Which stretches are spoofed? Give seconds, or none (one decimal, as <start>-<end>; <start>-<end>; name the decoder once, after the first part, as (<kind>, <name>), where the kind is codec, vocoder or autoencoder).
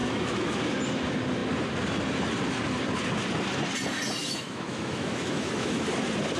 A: 0.0-0.6 (autoencoder, DAC-VAE); 4.2-5.9